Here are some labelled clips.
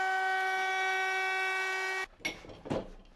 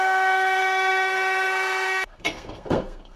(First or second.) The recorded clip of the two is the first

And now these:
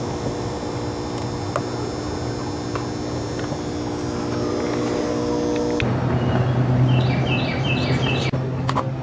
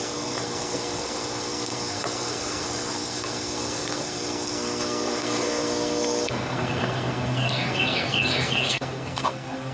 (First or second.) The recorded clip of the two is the first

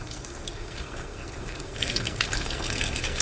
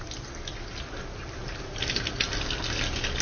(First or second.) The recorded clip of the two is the second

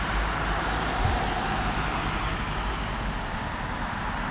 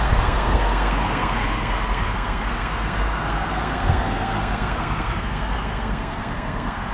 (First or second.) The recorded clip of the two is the first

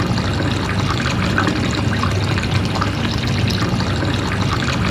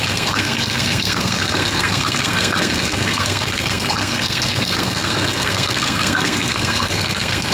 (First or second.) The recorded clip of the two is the first